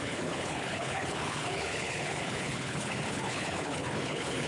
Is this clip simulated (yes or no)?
yes